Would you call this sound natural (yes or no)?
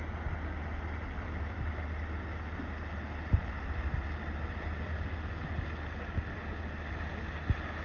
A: yes